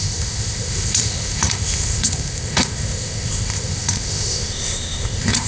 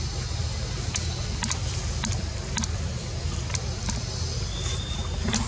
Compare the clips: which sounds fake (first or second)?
first